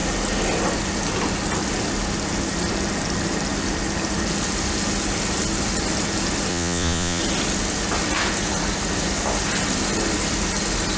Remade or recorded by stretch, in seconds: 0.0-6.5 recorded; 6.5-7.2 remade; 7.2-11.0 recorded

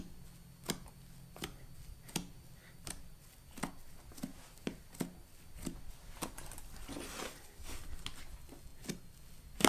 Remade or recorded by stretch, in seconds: 0.0-9.7 recorded

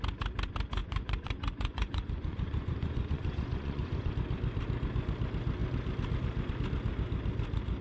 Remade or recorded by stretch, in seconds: 0.0-0.8 recorded; 0.8-4.1 remade; 4.1-7.8 recorded

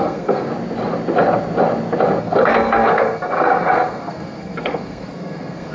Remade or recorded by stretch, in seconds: 0.0-0.5 remade; 0.5-2.2 recorded; 2.2-5.7 remade

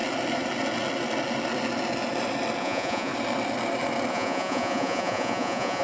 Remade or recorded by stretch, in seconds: 0.0-2.6 recorded; 2.6-3.1 remade; 3.1-4.1 recorded; 4.1-5.8 remade